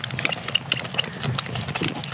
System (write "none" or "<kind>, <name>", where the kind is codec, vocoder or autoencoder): none